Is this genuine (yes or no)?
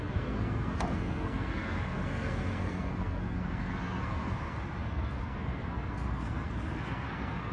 no